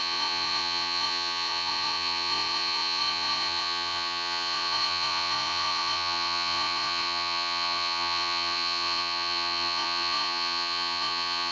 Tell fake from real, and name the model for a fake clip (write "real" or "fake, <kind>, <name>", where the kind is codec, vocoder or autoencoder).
fake, vocoder, Vocos